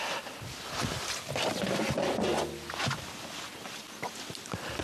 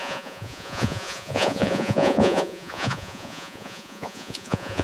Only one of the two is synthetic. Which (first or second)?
second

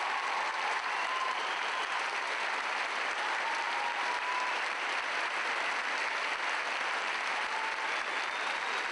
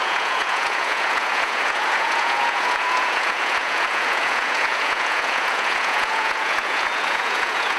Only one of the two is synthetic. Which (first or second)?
second